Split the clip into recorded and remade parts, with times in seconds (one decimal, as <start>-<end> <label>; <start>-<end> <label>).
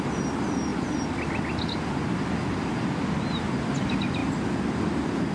0.0-5.3 recorded